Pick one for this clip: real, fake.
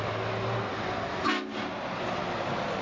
real